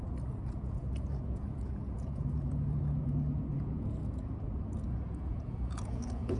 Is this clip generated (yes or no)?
yes